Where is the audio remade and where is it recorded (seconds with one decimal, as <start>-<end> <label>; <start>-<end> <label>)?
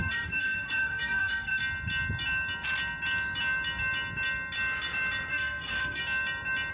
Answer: 0.0-1.6 remade; 1.6-5.3 recorded; 5.3-6.0 remade; 6.0-6.7 recorded